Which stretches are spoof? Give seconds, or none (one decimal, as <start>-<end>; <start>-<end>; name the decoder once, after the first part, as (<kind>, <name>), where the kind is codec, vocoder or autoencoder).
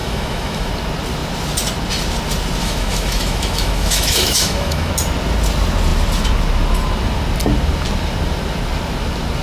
0.0-0.7 (autoencoder, DAC-VAE); 2.6-4.9